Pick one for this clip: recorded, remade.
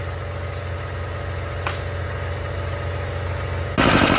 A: recorded